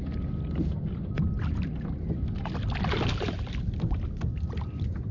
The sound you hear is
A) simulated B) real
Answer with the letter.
B